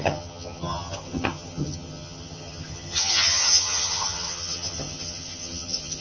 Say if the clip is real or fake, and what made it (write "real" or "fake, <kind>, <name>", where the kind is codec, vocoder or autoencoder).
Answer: fake, vocoder, HiFi-GAN